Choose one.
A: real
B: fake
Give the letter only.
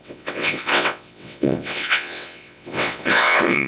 B